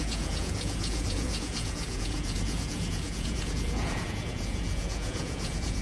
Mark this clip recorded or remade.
remade